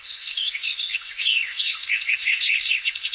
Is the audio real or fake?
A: fake